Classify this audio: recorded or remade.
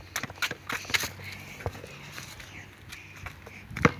recorded